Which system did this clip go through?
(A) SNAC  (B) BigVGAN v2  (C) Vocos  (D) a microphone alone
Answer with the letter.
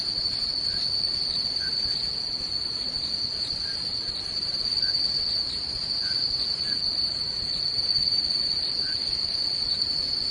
D